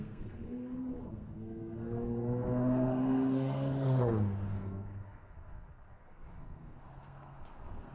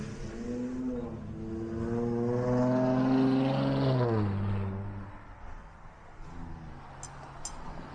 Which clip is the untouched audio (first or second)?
second